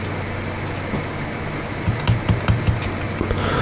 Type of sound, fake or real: real